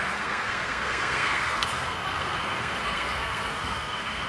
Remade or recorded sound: remade